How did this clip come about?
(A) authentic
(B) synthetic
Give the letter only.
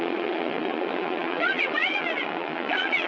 B